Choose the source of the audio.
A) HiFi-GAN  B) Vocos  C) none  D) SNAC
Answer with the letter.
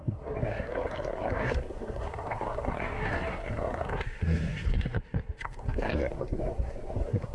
D